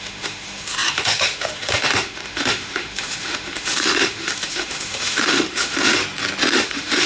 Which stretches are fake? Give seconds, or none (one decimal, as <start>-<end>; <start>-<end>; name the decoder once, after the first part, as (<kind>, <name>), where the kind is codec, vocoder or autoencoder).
0.0-6.0 (autoencoder, DAC-VAE); 6.5-7.1